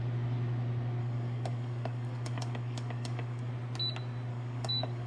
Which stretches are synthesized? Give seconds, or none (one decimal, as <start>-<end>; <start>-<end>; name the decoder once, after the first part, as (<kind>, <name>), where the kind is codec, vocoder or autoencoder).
1.0-3.5 (codec, DAC); 4.3-5.1

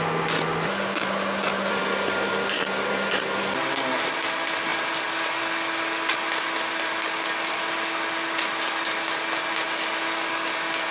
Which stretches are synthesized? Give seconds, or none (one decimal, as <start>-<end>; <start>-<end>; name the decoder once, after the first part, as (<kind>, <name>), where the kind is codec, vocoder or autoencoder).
none

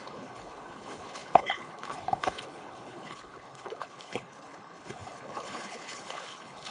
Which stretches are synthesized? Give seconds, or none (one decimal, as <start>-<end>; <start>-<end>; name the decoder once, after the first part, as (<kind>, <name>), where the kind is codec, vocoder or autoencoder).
0.0-6.7 (codec, HILCodec)